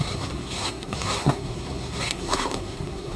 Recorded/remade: remade